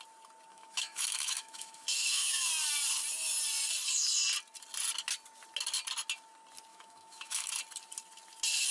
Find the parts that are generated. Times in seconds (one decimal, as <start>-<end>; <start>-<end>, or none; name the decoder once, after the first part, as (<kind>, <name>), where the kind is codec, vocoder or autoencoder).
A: 0.5-2.5 (autoencoder, DAC-VAE); 6.7-7.5